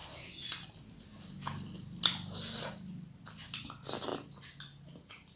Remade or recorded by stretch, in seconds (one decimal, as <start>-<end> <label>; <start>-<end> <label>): 0.0-5.4 recorded